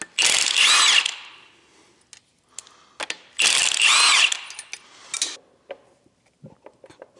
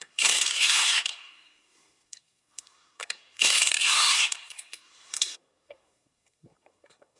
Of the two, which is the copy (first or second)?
second